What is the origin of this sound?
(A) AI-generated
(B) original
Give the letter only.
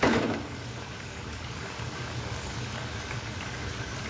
A